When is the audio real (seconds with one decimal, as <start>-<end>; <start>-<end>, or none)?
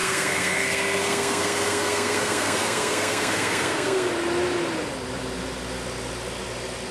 4.1-6.9